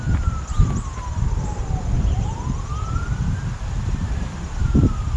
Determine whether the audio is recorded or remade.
remade